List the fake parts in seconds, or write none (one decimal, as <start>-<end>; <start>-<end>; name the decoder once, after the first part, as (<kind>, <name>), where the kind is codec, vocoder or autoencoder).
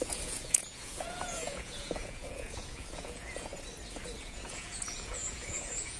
0.0-3.5 (vocoder, Vocos); 4.2-6.0